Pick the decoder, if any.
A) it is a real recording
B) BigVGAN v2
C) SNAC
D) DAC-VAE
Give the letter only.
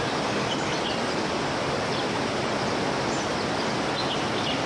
A